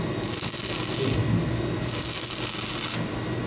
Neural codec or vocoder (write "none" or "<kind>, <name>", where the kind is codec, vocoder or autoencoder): none